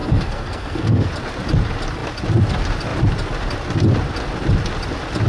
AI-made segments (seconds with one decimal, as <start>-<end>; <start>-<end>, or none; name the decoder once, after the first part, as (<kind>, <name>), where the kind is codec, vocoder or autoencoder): 0.0-1.1 (codec, SNAC)